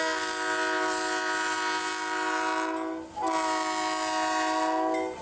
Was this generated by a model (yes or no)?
no